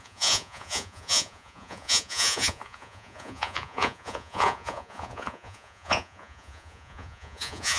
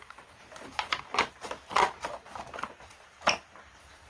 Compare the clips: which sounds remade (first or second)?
first